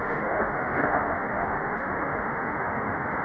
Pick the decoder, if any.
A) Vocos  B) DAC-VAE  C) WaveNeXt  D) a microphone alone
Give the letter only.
B